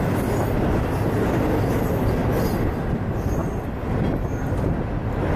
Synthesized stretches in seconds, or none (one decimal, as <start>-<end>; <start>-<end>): none